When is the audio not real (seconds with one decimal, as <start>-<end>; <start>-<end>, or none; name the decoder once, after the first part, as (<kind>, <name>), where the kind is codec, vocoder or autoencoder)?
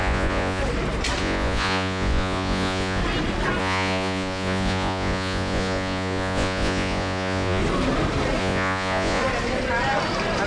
0.0-0.6 (vocoder, Vocos); 1.2-3.0; 3.6-7.6; 8.4-9.2